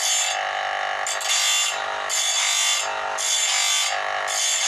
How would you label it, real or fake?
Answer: real